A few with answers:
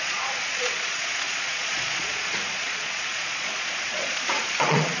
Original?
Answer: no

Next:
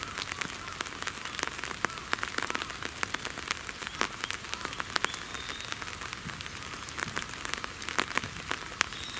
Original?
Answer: yes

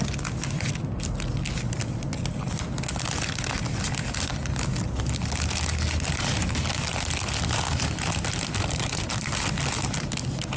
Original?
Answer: yes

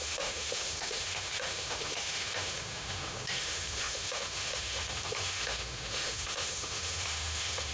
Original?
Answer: no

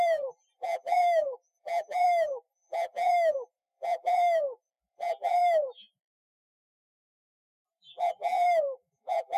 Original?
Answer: no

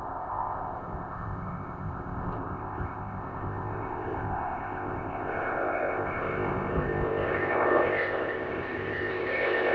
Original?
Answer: no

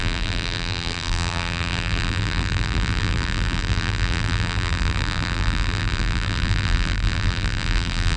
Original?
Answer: no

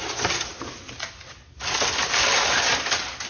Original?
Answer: yes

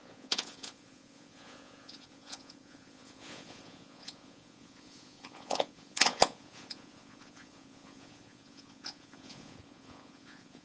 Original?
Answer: no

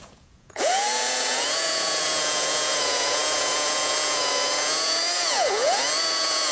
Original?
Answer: no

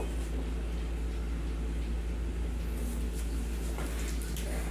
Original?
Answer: yes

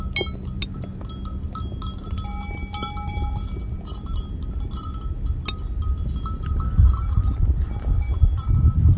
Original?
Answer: yes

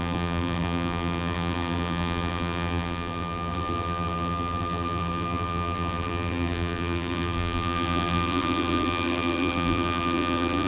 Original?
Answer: no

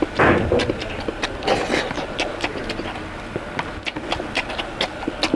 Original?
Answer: yes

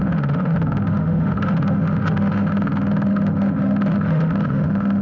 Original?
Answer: no